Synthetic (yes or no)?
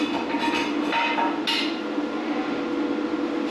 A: no